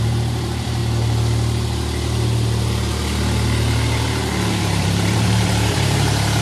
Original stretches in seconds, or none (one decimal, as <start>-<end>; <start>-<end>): 0.8-4.6